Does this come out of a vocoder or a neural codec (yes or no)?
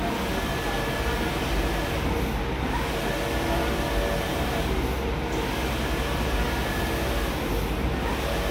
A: no